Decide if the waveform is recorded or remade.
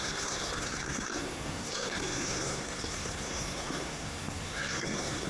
remade